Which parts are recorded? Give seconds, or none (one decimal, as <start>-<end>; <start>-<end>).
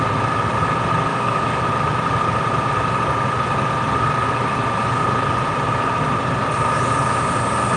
0.0-1.1; 1.6-7.8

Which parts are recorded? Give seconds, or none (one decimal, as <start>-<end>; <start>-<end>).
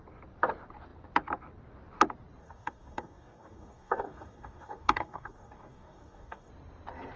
0.0-2.4; 6.5-7.2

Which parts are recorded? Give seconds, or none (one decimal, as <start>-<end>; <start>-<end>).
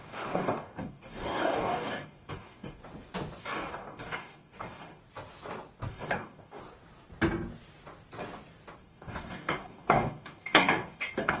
2.8-3.4; 5.0-5.9; 6.6-8.8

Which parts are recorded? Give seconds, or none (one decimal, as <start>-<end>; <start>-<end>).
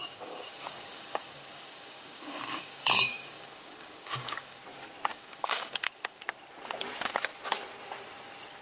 4.6-5.1; 6.2-8.6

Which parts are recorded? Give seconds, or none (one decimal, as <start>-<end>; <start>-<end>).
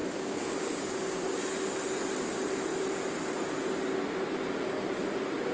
1.4-5.5